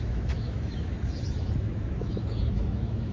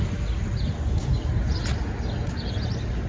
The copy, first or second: first